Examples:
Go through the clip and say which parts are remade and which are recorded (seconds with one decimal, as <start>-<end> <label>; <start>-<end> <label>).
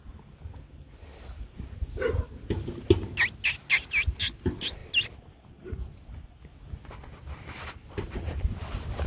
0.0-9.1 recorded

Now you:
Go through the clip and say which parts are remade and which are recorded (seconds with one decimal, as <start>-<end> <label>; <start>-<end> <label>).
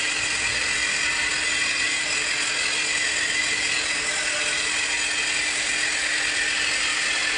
0.0-7.4 recorded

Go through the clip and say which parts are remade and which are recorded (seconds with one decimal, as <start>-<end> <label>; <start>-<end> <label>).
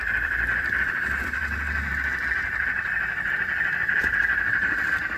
0.0-1.4 remade; 1.4-4.5 recorded; 4.5-5.2 remade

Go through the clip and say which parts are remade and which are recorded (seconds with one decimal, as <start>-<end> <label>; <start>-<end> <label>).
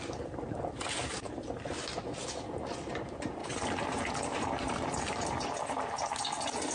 0.0-3.4 recorded; 3.4-6.1 remade; 6.1-6.7 recorded